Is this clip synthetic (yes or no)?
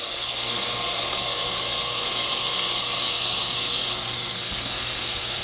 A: yes